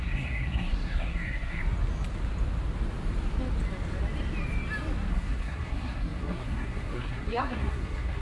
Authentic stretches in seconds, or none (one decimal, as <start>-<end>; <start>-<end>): 1.6-5.1